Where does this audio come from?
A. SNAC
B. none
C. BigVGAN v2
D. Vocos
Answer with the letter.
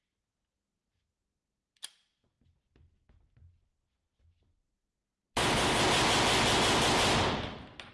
B